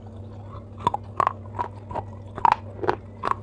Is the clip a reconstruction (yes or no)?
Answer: no